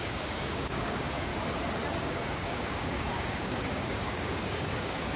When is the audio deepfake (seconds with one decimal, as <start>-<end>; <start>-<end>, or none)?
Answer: 0.0-1.3; 2.0-5.2